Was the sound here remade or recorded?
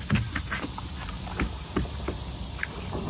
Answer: recorded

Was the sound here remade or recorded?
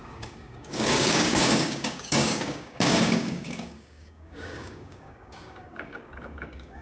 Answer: remade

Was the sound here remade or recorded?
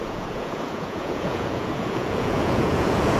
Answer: remade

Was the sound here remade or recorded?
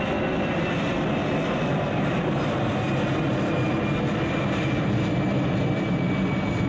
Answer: recorded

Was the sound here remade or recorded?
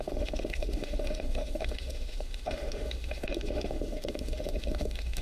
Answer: remade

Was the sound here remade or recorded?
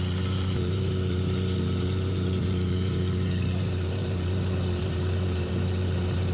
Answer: remade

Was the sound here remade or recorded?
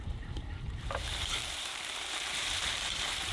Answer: remade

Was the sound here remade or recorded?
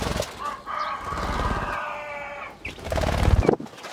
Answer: recorded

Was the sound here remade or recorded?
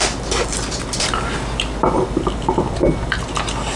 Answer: recorded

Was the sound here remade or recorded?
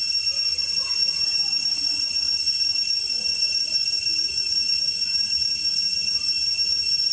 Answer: remade